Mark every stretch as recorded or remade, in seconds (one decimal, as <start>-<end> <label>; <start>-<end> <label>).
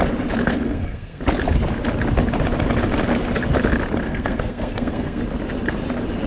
0.0-0.4 recorded; 0.4-1.2 remade; 1.2-4.0 recorded; 4.0-5.2 remade; 5.2-6.3 recorded